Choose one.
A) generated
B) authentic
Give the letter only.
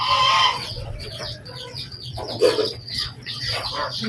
A